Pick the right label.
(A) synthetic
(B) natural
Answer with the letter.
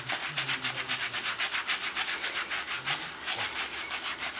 B